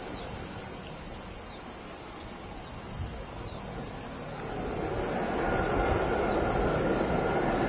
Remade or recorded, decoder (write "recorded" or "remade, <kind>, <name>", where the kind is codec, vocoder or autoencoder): recorded